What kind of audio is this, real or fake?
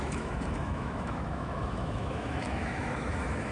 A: fake